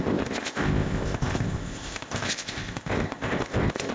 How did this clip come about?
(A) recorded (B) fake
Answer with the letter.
B